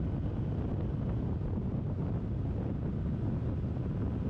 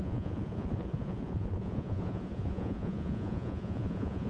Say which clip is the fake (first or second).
second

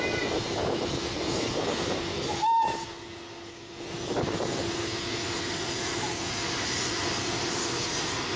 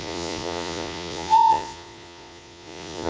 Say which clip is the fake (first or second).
second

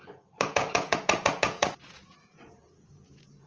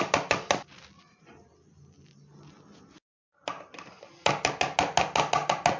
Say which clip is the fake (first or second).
first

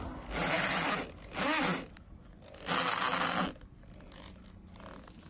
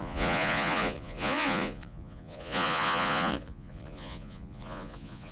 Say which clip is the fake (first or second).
second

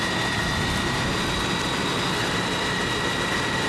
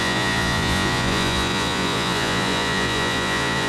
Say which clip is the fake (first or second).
second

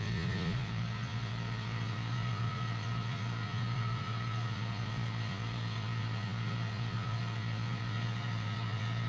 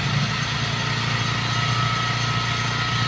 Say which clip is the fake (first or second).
first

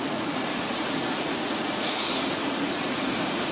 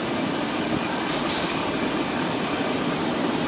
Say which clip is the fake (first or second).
first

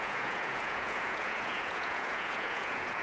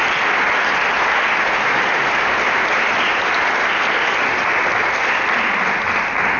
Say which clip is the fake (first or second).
first